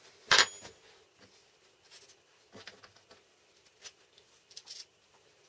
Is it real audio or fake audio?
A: real